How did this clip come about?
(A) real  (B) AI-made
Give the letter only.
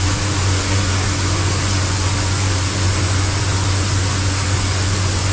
B